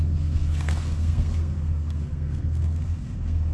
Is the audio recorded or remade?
remade